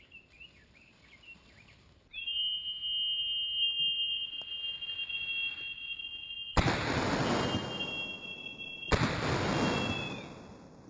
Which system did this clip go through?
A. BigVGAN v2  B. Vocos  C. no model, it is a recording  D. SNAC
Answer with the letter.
C